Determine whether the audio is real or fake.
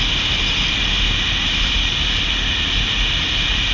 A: real